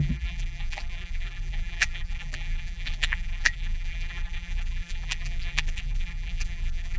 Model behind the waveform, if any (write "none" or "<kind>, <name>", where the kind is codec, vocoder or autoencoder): vocoder, BigVGAN v2